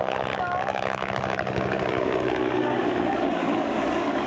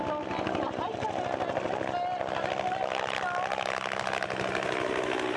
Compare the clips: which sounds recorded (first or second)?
second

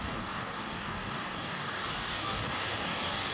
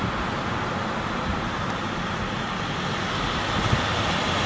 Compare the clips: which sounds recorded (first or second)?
second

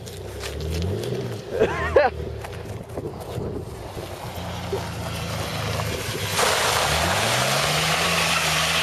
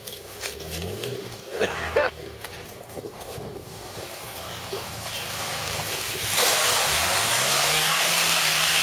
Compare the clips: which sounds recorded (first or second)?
first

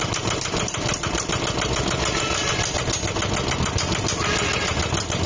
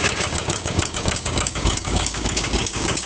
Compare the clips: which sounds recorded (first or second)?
first